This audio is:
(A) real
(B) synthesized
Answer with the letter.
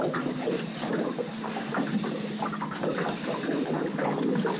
A